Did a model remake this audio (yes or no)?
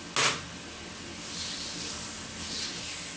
no